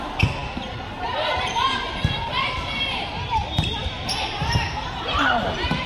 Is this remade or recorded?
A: remade